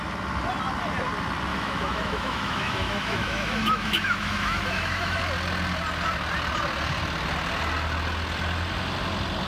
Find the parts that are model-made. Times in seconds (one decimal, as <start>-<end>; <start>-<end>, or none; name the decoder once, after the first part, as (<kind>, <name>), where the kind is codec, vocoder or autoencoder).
1.5-5.2 (autoencoder, DAC-VAE)